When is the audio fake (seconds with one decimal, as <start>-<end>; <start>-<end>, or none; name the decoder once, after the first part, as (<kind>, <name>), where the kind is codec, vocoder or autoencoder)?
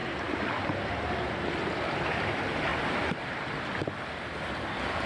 2.7-4.0 (vocoder, BigVGAN v2)